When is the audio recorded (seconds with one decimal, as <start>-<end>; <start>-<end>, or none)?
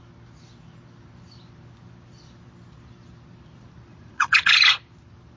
0.0-3.9; 4.5-5.4